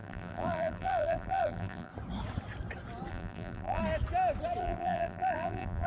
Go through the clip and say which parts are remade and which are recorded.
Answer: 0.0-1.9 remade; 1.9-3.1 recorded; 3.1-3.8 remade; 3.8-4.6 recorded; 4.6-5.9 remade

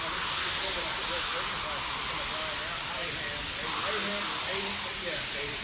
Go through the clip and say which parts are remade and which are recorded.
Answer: 0.0-5.6 recorded

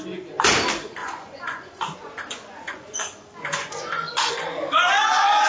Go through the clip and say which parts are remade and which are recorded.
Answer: 0.0-1.0 recorded; 1.0-4.3 remade; 4.3-5.5 recorded

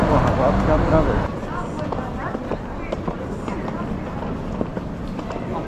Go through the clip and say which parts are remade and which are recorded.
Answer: 0.0-2.4 recorded; 2.4-3.4 remade; 3.4-4.7 recorded; 4.7-5.2 remade; 5.2-5.7 recorded

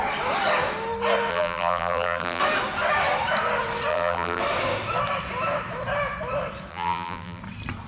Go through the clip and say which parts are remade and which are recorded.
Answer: 0.0-1.3 recorded; 1.3-2.4 remade; 2.4-3.9 recorded; 3.9-4.4 remade; 4.4-6.7 recorded; 6.7-7.4 remade; 7.4-7.9 recorded

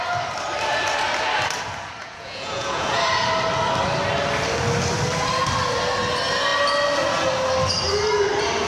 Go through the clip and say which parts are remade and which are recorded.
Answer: 0.0-2.0 recorded; 2.0-3.0 remade; 3.0-8.7 recorded